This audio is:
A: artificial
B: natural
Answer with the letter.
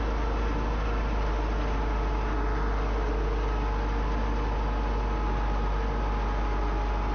B